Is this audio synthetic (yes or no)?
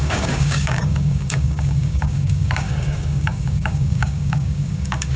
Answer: yes